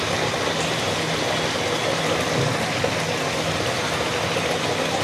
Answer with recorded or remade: recorded